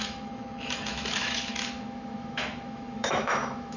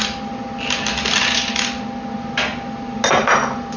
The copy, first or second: first